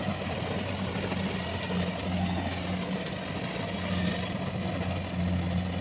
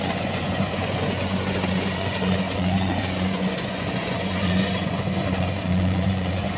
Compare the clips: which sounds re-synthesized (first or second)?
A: second